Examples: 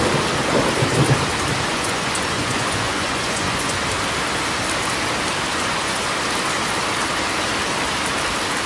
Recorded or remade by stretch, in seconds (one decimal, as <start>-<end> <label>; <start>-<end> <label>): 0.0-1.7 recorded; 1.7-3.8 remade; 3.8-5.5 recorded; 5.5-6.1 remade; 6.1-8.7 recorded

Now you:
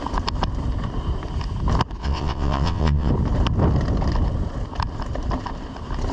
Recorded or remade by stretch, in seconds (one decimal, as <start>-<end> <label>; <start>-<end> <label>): 0.0-2.0 recorded; 2.0-3.1 remade; 3.1-6.1 recorded

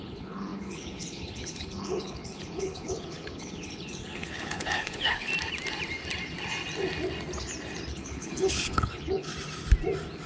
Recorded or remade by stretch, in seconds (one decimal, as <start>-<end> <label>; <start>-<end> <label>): 0.0-5.3 remade; 5.3-7.9 recorded; 7.9-9.3 remade; 9.3-10.3 recorded

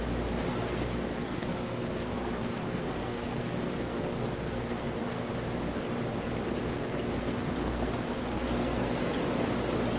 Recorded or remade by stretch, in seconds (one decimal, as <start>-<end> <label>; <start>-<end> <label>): 0.0-0.5 recorded; 0.5-5.3 remade; 5.3-6.6 recorded; 6.6-9.1 remade; 9.1-10.0 recorded

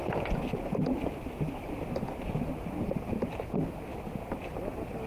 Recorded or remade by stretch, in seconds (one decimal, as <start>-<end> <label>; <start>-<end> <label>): 0.0-5.1 recorded

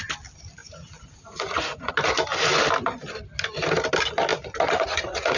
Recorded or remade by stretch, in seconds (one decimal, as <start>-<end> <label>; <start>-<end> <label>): 0.0-0.6 recorded; 0.6-1.9 remade; 1.9-4.3 recorded; 4.3-5.4 remade

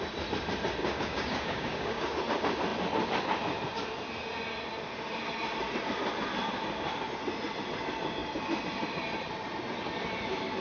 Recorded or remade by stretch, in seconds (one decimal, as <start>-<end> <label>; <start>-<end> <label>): 0.0-0.8 recorded; 0.8-2.2 remade; 2.2-10.6 recorded

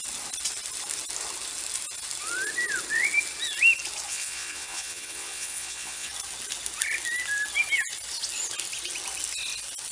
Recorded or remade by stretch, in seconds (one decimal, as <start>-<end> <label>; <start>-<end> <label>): 0.0-4.1 recorded; 4.1-6.1 remade; 6.1-9.9 recorded